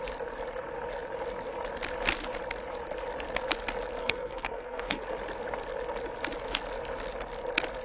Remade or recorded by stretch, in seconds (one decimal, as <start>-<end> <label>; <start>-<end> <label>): 0.0-4.0 recorded; 4.0-5.0 remade; 5.0-7.8 recorded